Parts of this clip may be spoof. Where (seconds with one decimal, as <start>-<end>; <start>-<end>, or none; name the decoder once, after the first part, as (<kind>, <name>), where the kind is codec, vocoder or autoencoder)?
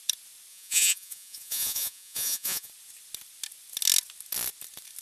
0.5-2.7 (vocoder, Vocos)